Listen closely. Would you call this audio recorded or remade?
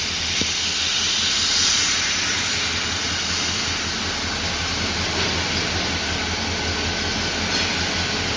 recorded